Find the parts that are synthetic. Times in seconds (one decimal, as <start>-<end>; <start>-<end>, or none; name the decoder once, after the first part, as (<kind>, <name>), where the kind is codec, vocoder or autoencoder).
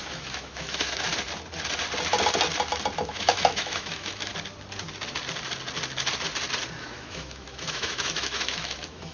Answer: 0.0-1.1 (autoencoder, DAC-VAE); 3.0-4.3; 6.8-9.1